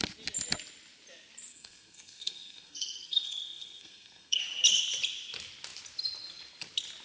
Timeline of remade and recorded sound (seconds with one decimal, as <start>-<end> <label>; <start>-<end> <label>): 0.0-1.5 recorded; 1.5-4.4 remade; 4.4-7.0 recorded